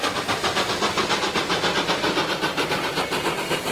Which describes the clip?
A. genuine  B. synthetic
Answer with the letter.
A